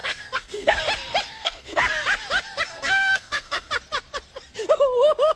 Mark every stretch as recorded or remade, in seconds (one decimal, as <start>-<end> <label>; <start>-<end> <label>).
0.0-0.8 remade; 0.8-1.3 recorded; 1.3-1.8 remade; 1.8-2.7 recorded; 2.7-3.7 remade; 3.7-5.4 recorded